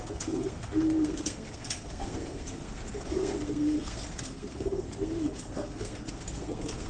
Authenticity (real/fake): fake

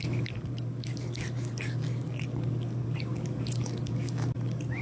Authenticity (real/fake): fake